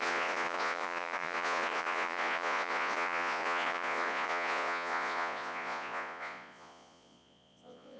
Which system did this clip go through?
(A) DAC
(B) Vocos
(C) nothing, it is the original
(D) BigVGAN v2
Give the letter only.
B